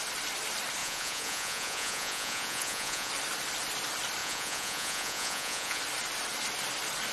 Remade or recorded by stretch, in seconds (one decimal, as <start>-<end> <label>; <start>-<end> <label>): 0.0-0.8 recorded; 0.8-3.1 remade; 3.1-4.2 recorded; 4.2-5.8 remade; 5.8-7.1 recorded